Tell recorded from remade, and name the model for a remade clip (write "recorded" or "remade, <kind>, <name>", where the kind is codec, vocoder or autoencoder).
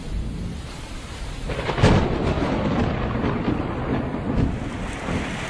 recorded